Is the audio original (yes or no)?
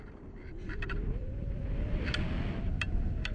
yes